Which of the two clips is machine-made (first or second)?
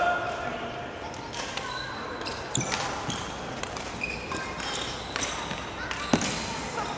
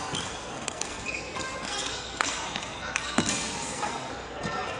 second